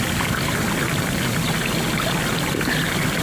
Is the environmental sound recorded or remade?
recorded